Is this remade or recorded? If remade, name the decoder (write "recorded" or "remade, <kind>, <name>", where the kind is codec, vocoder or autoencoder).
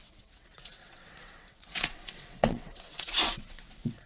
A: remade, vocoder, WaveNeXt